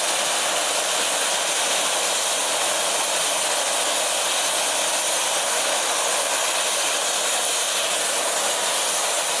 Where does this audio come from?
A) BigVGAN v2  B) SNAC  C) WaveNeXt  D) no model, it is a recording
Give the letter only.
D